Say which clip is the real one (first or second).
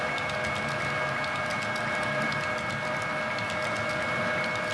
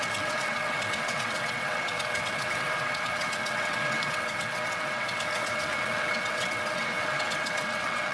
first